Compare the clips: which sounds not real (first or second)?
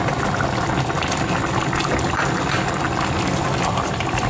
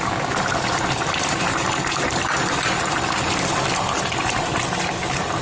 second